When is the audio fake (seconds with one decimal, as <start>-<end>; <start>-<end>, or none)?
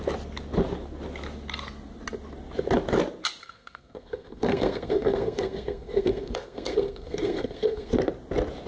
3.4-7.9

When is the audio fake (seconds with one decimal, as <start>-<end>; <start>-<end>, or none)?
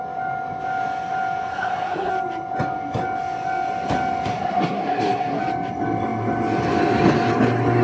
1.5-2.1; 4.3-5.4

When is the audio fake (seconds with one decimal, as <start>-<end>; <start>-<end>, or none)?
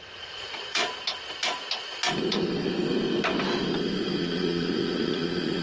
0.0-0.8; 4.2-5.6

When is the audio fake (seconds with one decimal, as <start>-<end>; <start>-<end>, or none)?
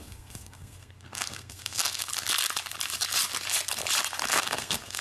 0.0-2.1; 4.3-5.0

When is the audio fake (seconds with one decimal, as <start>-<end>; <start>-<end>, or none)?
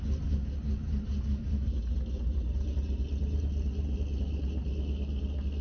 none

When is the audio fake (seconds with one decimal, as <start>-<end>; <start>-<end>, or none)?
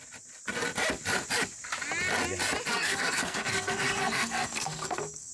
2.7-5.3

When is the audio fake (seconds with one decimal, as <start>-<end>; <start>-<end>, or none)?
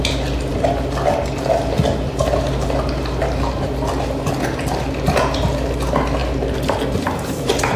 none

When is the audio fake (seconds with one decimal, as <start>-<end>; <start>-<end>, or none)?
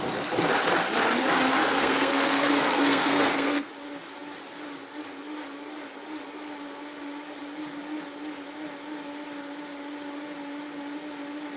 1.6-3.7